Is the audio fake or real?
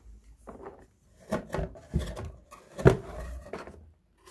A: real